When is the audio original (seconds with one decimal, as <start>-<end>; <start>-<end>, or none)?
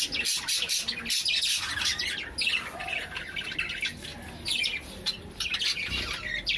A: 0.0-6.6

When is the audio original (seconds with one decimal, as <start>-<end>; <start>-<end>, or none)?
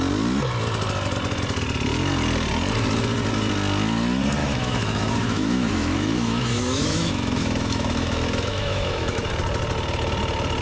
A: 0.0-4.4; 9.3-10.6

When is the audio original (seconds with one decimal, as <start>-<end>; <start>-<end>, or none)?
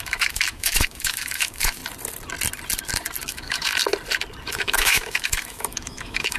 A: 1.8-3.2; 3.8-4.5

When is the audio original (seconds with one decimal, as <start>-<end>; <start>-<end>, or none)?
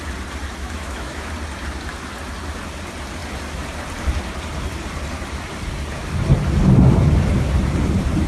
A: 0.0-0.6; 1.3-8.3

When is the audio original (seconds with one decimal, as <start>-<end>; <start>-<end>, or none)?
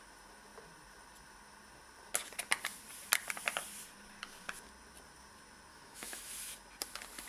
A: 0.0-5.7; 6.3-7.3